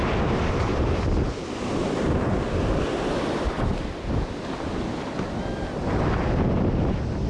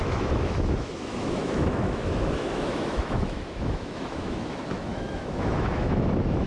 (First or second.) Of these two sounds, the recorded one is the first